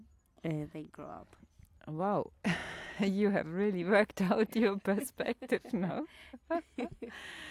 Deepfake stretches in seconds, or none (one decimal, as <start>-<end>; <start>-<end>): none